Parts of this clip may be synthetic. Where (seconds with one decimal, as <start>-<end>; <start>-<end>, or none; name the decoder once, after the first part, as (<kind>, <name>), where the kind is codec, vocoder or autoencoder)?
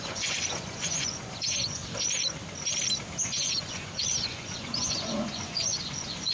0.0-1.8 (vocoder, Vocos); 3.3-6.3